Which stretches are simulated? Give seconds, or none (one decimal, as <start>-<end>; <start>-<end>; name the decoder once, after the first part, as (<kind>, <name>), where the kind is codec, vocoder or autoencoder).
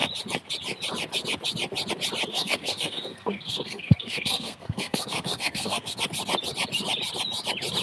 2.3-6.0 (codec, SNAC)